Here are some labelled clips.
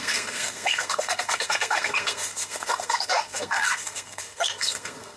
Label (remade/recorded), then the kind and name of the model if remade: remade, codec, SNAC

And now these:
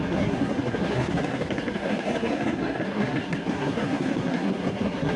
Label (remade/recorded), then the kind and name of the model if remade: remade, codec, SNAC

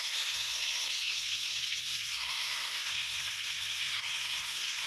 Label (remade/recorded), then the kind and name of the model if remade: remade, codec, SNAC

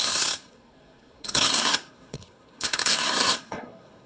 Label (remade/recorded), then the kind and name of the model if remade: remade, codec, SNAC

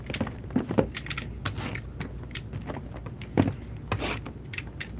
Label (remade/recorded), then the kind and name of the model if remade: recorded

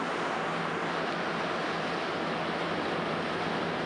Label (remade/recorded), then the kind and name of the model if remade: recorded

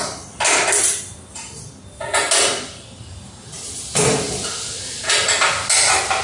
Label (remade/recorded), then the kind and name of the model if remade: recorded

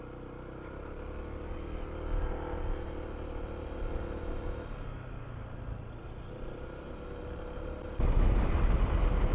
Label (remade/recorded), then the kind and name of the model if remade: recorded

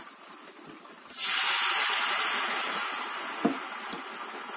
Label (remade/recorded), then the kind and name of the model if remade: recorded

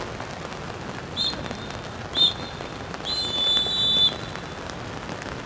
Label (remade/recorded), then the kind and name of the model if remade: recorded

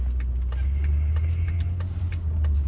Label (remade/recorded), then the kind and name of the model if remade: recorded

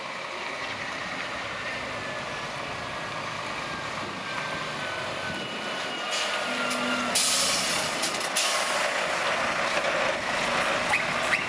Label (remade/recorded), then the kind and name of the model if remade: recorded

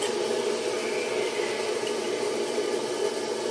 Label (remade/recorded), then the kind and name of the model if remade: recorded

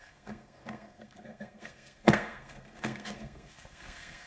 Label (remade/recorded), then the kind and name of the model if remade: remade, codec, SNAC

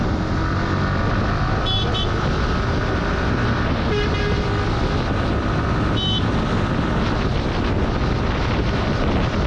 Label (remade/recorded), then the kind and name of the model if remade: recorded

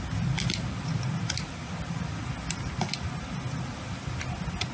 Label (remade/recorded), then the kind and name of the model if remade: recorded